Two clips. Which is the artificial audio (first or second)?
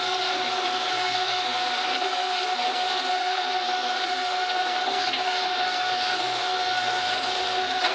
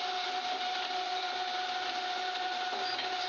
first